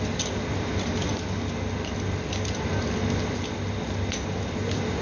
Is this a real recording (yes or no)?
yes